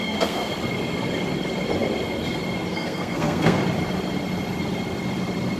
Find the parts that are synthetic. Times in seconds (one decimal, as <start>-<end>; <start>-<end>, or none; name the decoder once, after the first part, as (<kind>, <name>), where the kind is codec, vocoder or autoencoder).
0.0-0.5 (codec, SNAC); 2.7-3.6